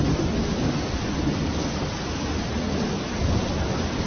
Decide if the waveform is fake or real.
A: real